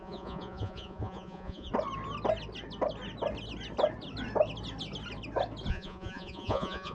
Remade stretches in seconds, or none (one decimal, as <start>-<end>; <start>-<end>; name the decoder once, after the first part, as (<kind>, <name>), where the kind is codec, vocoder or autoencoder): 0.0-1.7 (vocoder, Vocos); 5.7-6.9

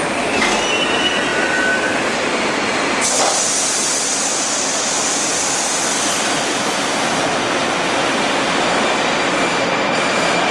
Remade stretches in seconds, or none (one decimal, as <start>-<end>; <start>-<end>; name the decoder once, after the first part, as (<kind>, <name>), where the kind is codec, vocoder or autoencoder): none